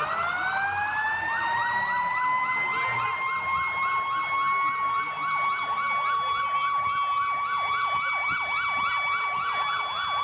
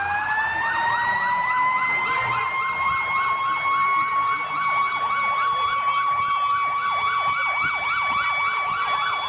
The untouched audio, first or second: first